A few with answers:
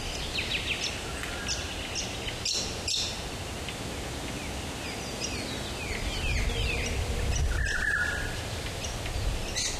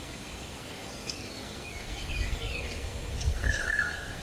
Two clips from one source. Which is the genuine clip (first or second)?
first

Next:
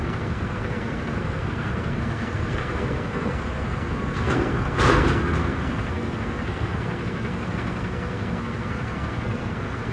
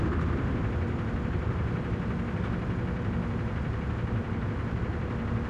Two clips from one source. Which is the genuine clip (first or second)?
second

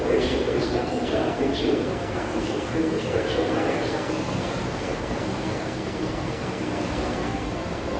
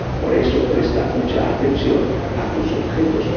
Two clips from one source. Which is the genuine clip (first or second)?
second